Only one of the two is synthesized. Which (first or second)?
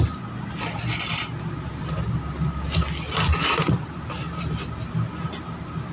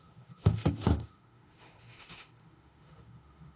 second